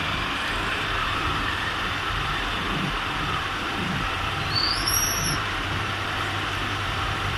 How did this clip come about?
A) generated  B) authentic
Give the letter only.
A